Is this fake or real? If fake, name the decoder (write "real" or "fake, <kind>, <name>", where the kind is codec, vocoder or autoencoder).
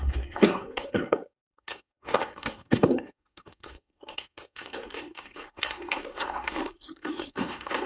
fake, codec, SNAC